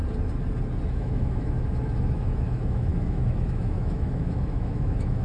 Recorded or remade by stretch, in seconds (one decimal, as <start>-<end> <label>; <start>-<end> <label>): 0.0-0.9 recorded; 0.9-5.2 remade